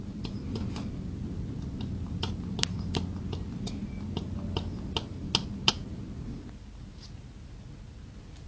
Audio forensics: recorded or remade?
recorded